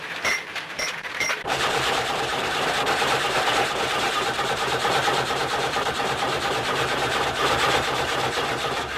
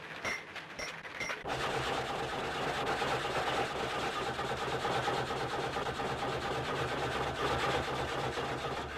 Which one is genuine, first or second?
second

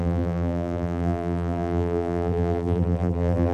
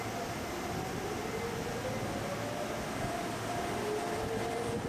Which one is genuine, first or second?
second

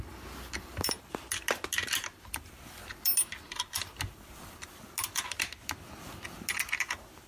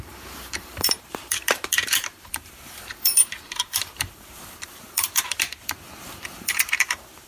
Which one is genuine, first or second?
first